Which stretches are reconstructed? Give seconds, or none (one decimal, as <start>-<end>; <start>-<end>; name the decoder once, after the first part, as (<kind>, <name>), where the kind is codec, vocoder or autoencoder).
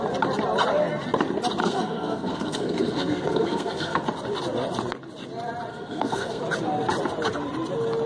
1.6-4.0 (codec, SNAC); 5.7-6.4